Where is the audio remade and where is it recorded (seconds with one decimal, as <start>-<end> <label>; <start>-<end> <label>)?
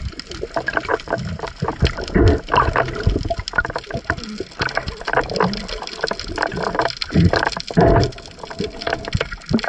0.0-9.7 recorded